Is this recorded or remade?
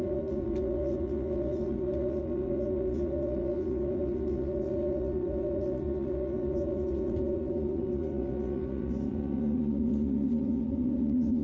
remade